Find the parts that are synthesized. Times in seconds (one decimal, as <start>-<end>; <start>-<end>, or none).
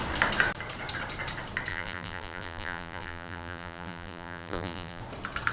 1.7-5.0